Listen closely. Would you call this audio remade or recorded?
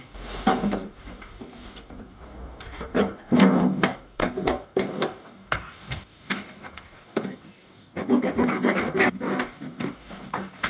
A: remade